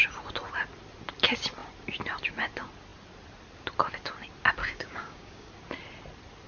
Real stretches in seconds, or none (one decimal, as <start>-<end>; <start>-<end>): 0.0-4.6; 5.5-6.5